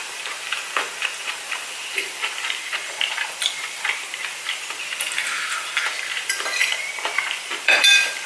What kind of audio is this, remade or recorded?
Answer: remade